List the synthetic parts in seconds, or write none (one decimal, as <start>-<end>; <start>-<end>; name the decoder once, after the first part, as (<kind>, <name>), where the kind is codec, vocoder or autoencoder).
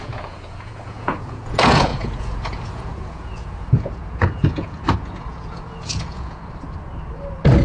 0.0-6.4 (vocoder, Vocos)